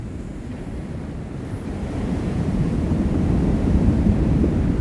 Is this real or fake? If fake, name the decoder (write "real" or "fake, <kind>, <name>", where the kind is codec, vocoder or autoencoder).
fake, vocoder, BigVGAN v2